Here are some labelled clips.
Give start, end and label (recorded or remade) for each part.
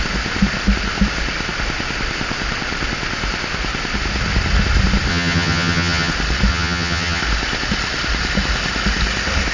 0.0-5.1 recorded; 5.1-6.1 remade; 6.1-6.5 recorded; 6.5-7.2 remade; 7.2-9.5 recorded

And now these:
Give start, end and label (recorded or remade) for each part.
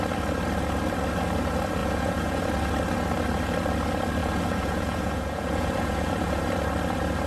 0.0-1.8 recorded; 1.8-2.4 remade; 2.4-4.2 recorded; 4.2-6.4 remade; 6.4-7.3 recorded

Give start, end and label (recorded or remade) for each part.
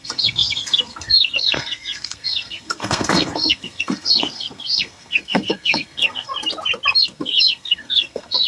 0.0-6.3 remade; 6.3-7.0 recorded; 7.0-8.5 remade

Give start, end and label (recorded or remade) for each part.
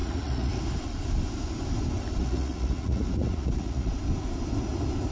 0.0-0.6 remade; 0.6-2.2 recorded; 2.2-3.9 remade; 3.9-5.1 recorded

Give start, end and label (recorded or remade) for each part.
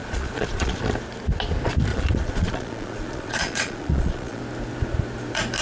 0.0-0.8 remade; 0.8-1.9 recorded; 1.9-4.4 remade; 4.4-5.6 recorded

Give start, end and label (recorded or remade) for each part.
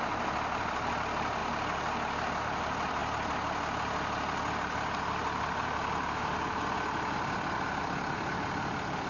0.0-9.1 recorded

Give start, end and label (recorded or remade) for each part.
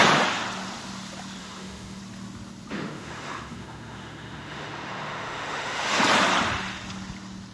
0.0-1.4 recorded; 1.4-2.0 remade; 2.0-2.7 recorded; 2.7-6.0 remade; 6.0-7.5 recorded